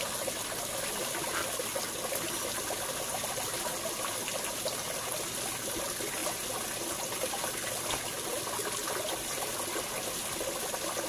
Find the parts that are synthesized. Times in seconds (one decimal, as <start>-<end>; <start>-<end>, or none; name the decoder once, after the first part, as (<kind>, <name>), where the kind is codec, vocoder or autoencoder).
none